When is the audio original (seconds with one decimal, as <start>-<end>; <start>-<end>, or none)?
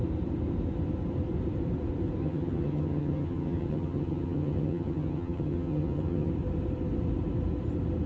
0.0-2.2; 6.3-8.1